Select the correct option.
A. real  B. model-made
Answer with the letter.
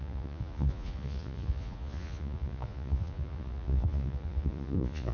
B